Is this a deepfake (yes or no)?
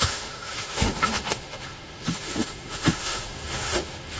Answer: yes